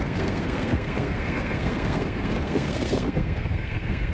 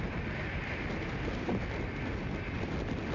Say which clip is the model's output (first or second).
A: first